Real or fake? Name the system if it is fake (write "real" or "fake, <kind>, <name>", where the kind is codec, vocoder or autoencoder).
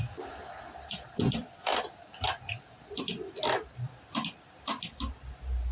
real